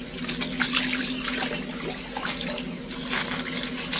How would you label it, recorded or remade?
recorded